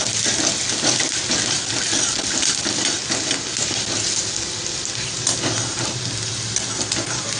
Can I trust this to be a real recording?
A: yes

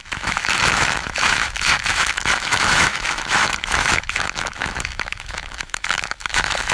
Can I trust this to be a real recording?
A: no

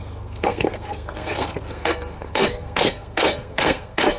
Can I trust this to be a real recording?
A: no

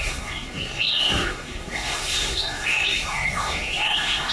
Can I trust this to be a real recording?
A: no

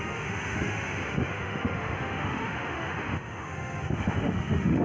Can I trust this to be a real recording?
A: no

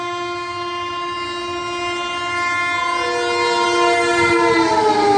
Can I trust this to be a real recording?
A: yes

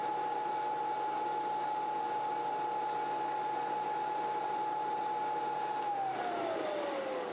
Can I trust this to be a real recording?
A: yes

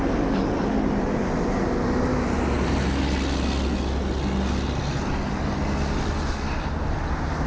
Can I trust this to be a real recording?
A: yes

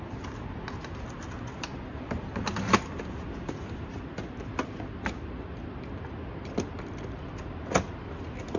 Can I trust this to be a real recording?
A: yes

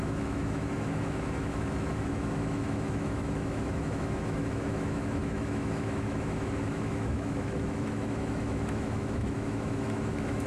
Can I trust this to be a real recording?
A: no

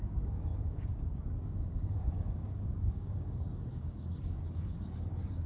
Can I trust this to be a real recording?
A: no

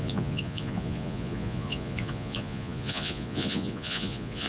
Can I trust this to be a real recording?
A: no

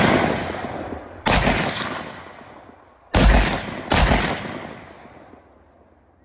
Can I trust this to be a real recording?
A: yes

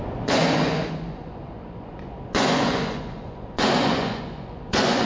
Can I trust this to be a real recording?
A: no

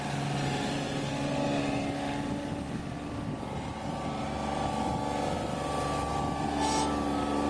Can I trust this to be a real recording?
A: yes